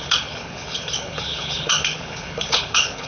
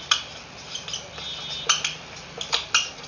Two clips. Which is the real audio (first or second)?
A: second